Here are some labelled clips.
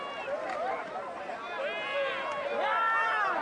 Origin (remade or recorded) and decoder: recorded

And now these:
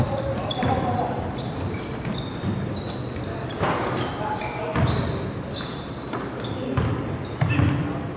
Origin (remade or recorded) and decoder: recorded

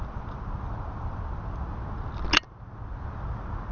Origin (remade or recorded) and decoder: recorded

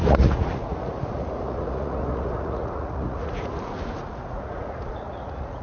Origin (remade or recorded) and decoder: remade, vocoder, Vocos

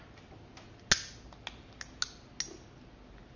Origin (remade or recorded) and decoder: recorded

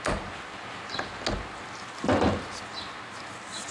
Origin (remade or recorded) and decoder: recorded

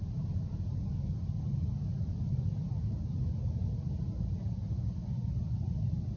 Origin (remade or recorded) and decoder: recorded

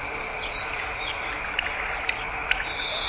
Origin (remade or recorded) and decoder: recorded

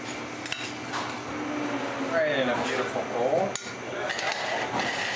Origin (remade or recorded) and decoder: recorded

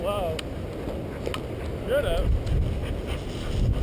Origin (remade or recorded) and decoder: recorded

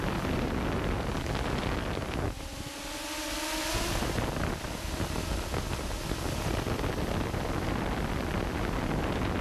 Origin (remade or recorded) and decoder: recorded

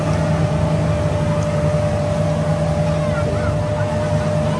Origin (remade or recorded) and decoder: recorded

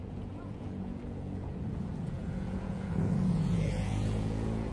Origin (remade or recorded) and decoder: remade, vocoder, Vocos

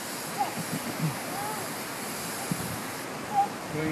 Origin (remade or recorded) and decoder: recorded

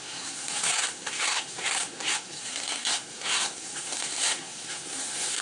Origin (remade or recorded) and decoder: remade, codec, SNAC